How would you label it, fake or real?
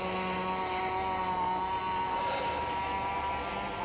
real